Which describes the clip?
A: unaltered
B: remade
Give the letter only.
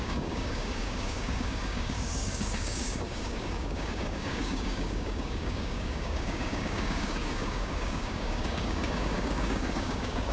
B